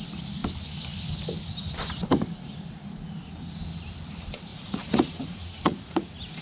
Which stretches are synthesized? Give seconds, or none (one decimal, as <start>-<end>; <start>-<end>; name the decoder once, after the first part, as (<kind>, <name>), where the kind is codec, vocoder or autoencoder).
4.5-6.4 (vocoder, Vocos)